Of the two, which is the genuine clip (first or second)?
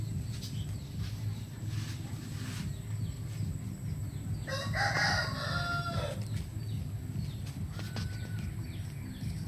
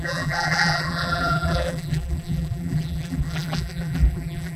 first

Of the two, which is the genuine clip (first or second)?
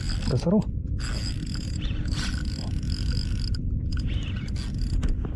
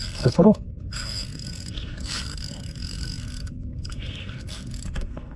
first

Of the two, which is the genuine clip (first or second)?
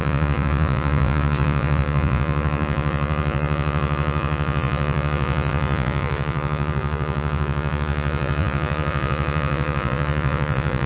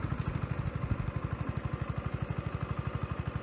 second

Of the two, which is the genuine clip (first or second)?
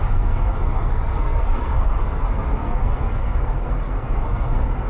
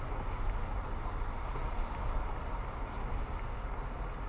second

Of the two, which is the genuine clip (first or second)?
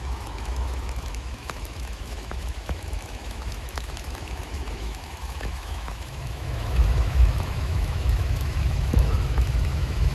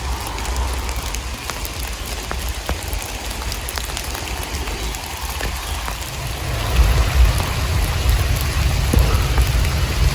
second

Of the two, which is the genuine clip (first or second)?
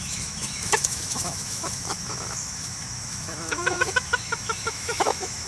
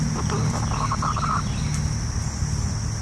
second